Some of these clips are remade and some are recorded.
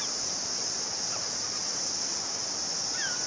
recorded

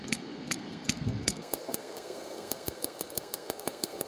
remade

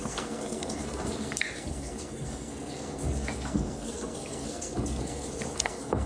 remade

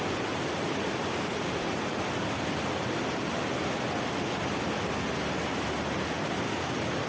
recorded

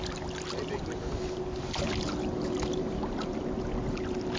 recorded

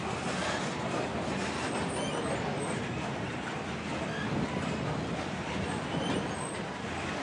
recorded